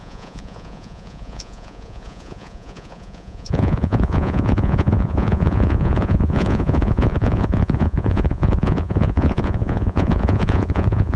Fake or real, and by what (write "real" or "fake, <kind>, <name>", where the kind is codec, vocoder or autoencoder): fake, vocoder, Vocos